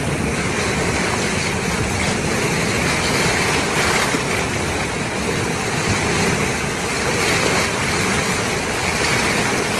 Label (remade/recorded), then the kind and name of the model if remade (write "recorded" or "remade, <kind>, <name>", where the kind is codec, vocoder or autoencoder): recorded